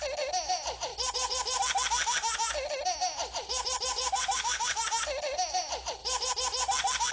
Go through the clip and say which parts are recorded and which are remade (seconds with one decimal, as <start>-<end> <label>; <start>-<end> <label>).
0.0-0.9 recorded; 0.9-1.6 remade; 1.6-3.2 recorded; 3.2-4.8 remade; 4.8-7.1 recorded